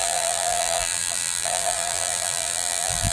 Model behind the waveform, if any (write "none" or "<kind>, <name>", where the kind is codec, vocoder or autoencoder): vocoder, BigVGAN v2